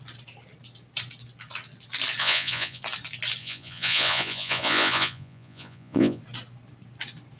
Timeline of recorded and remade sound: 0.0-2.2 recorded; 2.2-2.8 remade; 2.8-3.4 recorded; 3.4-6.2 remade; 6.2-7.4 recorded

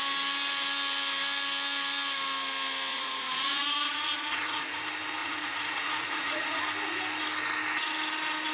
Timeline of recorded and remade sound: 0.0-2.9 recorded; 2.9-4.8 remade; 4.8-5.2 recorded; 5.2-6.6 remade; 6.6-8.5 recorded

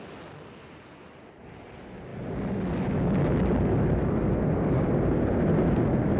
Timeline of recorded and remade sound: 0.0-6.2 recorded